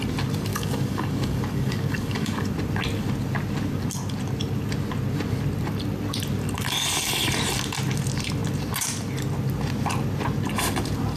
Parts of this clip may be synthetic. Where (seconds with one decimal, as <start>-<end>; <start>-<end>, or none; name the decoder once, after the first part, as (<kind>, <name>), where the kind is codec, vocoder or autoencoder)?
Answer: 0.5-2.5 (codec, DAC)